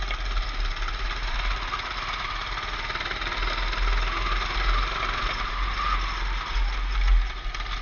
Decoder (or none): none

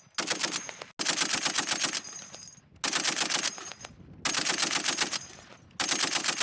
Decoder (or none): none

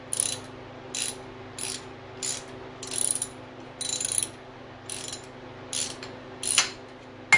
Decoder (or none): none